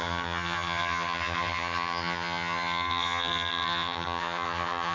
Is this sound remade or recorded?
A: remade